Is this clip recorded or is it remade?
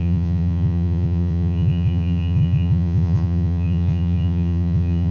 remade